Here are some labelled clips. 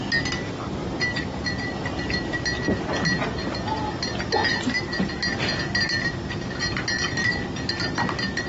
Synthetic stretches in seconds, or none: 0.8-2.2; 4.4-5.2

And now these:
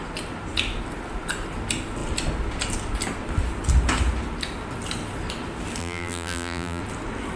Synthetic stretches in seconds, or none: 5.8-6.8

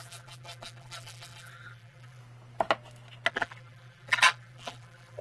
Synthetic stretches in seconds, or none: 0.0-2.2; 3.3-5.2

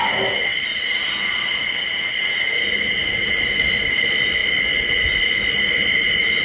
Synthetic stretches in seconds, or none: none

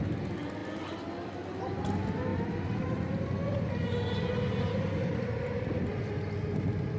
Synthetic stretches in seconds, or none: none

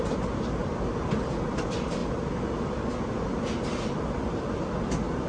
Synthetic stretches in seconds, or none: 0.0-0.6; 1.6-2.0

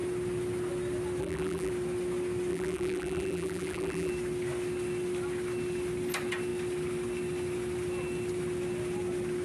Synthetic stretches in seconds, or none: 1.2-1.7; 2.5-4.1